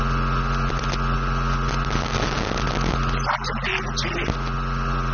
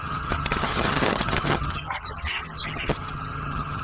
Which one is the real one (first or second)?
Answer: first